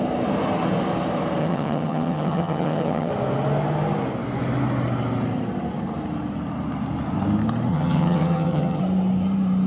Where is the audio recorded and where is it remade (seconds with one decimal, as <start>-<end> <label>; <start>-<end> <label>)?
0.0-1.4 recorded; 1.4-3.1 remade; 3.1-7.7 recorded; 7.7-8.8 remade; 8.8-9.7 recorded